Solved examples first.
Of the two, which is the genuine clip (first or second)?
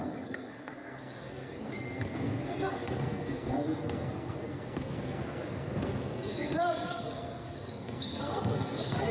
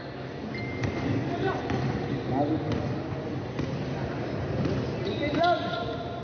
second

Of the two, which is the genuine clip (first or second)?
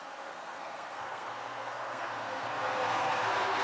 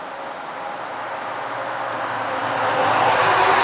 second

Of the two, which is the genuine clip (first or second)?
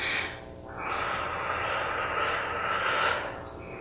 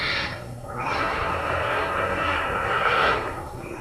first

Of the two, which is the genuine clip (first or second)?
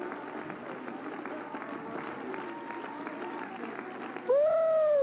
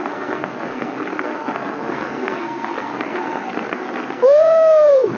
first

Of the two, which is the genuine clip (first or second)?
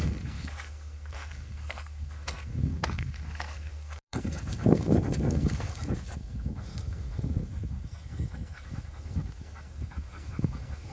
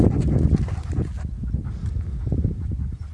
second